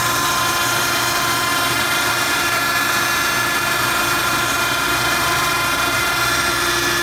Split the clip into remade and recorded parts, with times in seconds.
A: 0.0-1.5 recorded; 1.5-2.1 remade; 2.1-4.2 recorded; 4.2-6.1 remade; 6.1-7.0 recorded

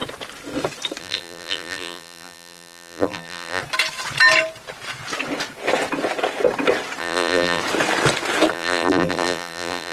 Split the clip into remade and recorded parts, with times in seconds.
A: 0.0-1.0 recorded; 1.0-3.6 remade; 3.6-7.0 recorded; 7.0-7.6 remade; 7.6-8.5 recorded; 8.5-9.9 remade

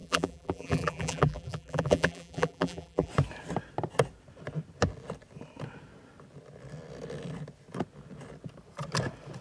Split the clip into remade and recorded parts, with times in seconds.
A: 0.0-3.1 remade; 3.1-9.4 recorded

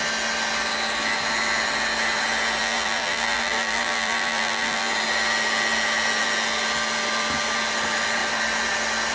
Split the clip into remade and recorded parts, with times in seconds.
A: 0.0-2.6 recorded; 2.6-4.9 remade; 4.9-9.1 recorded